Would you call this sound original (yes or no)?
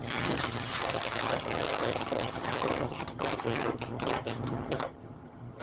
no